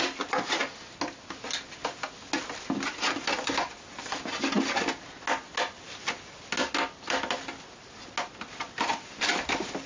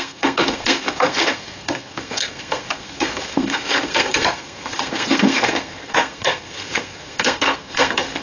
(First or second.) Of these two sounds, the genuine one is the first